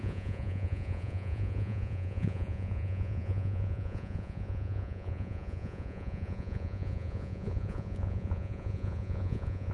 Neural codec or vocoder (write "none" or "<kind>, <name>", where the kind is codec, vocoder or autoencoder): vocoder, Vocos